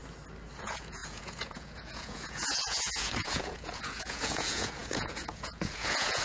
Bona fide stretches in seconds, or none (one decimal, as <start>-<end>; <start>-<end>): 0.0-0.6

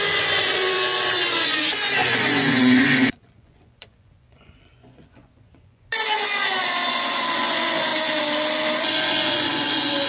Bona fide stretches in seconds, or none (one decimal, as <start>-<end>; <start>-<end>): 7.9-8.8

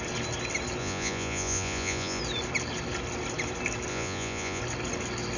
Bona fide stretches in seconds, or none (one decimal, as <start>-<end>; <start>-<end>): 0.0-0.8; 2.2-3.9; 4.6-5.4

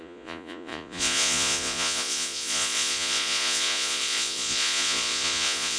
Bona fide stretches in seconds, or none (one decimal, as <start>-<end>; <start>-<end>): none

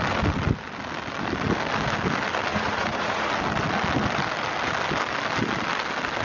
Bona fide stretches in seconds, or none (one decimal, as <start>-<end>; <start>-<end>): 0.0-2.5; 3.3-6.2

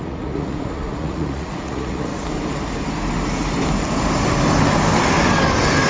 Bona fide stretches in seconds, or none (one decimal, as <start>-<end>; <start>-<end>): 2.1-5.9

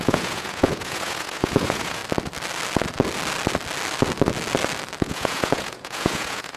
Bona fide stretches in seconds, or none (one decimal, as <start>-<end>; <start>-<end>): 2.0-5.0

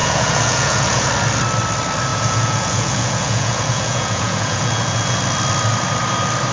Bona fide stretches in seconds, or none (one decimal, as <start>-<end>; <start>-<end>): 1.1-2.1; 5.2-6.5